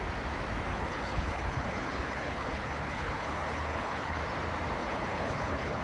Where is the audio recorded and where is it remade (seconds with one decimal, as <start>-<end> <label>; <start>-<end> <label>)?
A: 0.0-0.7 recorded; 0.7-4.2 remade; 4.2-4.8 recorded; 4.8-5.8 remade